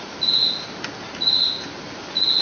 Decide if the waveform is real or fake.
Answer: real